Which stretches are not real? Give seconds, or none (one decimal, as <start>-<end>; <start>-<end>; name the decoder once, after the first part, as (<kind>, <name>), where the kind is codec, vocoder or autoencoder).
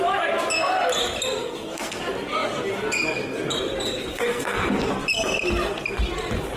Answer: 1.4-2.0 (codec, SNAC); 4.1-4.9